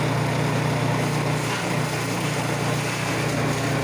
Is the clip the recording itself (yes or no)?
yes